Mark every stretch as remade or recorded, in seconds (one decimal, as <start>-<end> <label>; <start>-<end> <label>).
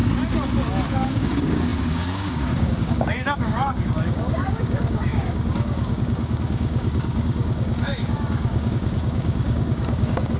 0.0-0.9 recorded; 0.9-10.4 remade